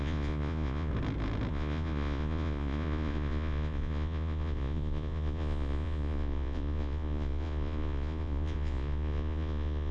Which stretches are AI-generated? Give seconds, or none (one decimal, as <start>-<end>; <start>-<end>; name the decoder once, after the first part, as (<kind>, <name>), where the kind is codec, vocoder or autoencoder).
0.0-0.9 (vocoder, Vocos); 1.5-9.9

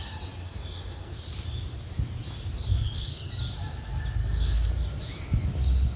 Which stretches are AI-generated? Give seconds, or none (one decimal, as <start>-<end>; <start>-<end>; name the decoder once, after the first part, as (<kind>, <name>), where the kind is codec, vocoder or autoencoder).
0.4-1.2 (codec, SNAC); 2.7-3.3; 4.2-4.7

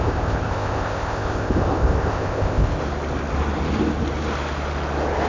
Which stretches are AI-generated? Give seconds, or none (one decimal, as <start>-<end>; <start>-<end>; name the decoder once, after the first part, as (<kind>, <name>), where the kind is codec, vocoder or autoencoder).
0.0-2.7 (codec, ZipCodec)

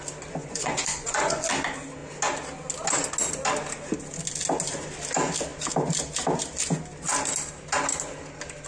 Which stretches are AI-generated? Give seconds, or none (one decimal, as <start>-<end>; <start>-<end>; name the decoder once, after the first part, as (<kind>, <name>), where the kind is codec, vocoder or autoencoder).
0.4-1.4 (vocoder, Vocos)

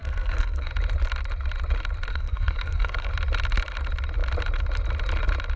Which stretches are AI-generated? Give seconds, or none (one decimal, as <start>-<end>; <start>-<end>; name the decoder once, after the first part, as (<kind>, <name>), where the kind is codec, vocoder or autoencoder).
0.0-0.7 (codec, SNAC); 2.1-3.1

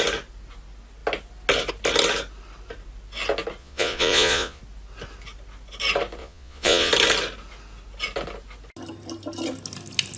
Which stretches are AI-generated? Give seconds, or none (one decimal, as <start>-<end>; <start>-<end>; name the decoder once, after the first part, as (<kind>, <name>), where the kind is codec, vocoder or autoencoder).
3.6-4.6 (vocoder, Vocos); 6.2-6.9

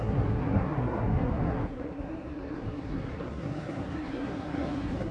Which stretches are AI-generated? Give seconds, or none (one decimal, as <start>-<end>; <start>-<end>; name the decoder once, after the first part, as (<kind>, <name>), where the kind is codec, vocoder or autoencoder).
0.0-5.1 (codec, SNAC)

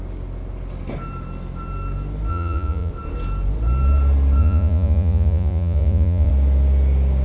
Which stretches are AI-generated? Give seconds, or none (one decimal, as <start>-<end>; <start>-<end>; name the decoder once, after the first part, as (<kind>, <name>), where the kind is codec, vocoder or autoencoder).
2.3-2.9 (vocoder, Vocos); 4.4-6.3